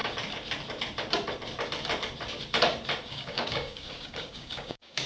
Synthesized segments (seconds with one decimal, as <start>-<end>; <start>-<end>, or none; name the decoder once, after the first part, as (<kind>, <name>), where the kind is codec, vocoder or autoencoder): 3.1-5.1 (codec, DAC)